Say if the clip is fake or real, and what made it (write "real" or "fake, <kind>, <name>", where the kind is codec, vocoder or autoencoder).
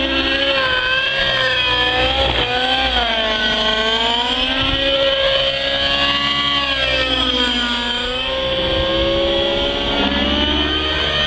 real